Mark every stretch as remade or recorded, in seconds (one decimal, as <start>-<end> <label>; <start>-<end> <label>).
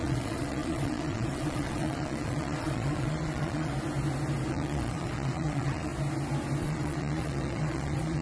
0.0-3.7 remade; 3.7-4.5 recorded; 4.5-5.9 remade; 5.9-6.6 recorded; 6.6-8.2 remade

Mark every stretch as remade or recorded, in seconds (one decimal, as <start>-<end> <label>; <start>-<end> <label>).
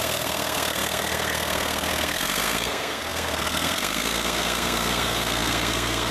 0.0-6.1 remade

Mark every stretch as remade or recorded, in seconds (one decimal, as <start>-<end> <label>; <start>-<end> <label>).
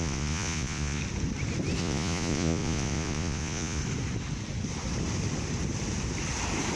0.0-1.0 remade; 1.0-1.8 recorded; 1.8-3.8 remade; 3.8-6.8 recorded